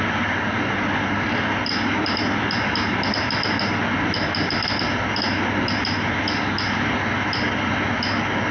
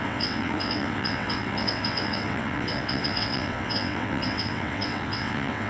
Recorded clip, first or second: first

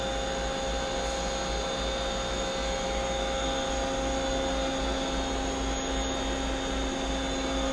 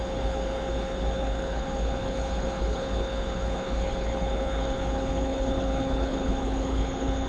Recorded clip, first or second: first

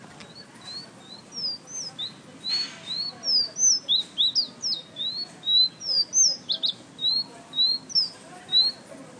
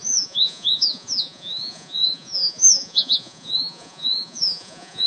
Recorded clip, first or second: first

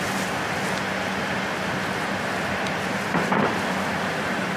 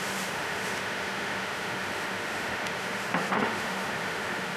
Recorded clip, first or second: first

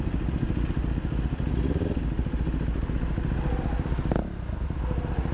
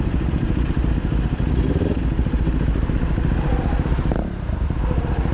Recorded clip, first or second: first